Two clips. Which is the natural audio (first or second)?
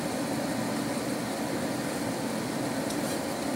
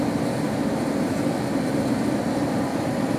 first